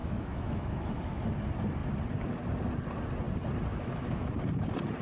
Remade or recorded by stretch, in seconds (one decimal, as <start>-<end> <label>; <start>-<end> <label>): 0.0-1.2 remade; 1.2-3.7 recorded; 3.7-4.3 remade; 4.3-5.0 recorded